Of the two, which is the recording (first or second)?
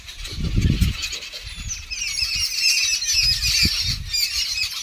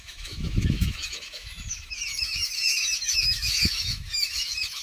first